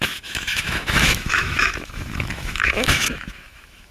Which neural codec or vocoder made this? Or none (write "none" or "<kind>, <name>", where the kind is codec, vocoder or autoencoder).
autoencoder, DAC-VAE